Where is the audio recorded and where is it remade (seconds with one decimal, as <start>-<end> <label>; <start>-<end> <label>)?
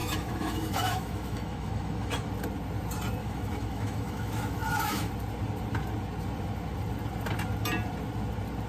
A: 0.0-2.3 remade; 2.3-3.2 recorded; 3.2-5.1 remade; 5.1-8.7 recorded